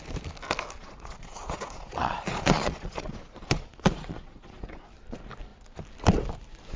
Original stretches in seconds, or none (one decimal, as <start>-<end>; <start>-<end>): 0.0-0.8; 4.9-6.8